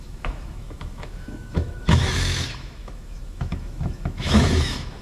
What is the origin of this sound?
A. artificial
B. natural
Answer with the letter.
A